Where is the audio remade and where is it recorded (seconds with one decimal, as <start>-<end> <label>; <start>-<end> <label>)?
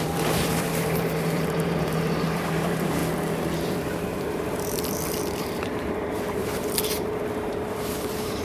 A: 0.0-3.0 remade; 3.0-3.7 recorded; 3.7-8.4 remade